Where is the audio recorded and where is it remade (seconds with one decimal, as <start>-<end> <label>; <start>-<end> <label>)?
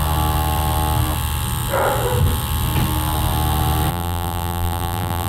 0.0-3.9 recorded; 3.9-5.3 remade